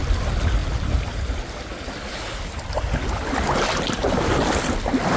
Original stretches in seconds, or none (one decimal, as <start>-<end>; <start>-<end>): 0.0-5.2